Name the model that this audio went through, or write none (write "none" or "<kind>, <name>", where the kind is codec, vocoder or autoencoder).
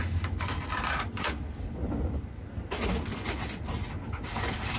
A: none